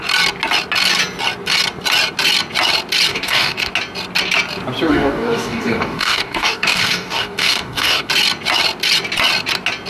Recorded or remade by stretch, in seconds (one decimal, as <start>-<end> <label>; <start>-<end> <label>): 0.0-3.1 recorded; 3.1-3.7 remade; 3.7-4.9 recorded; 4.9-8.1 remade; 8.1-9.9 recorded